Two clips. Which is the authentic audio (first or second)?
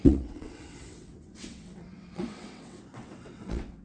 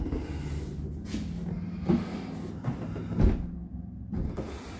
second